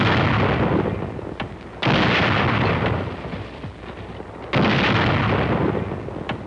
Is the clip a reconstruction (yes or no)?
no